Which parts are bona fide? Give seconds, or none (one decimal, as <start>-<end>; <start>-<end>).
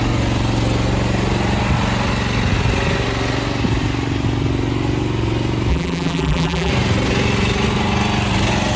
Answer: 0.0-5.7; 6.7-8.8